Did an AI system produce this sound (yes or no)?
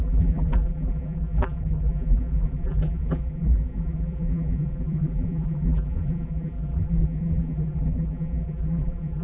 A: yes